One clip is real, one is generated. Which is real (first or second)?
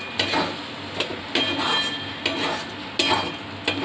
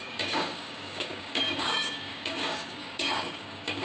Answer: first